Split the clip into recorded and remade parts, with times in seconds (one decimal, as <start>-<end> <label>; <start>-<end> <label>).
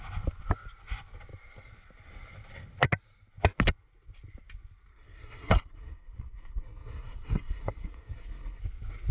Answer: 0.0-4.9 recorded; 4.9-8.6 remade; 8.6-9.1 recorded